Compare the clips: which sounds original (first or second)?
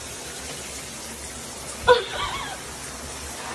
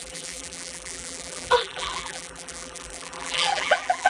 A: first